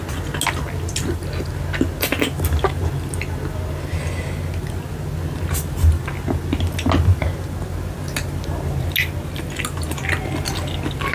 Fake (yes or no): no